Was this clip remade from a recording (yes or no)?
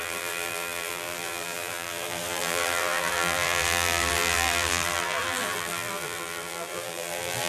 yes